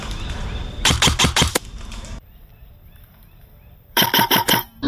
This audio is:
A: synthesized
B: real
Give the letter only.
A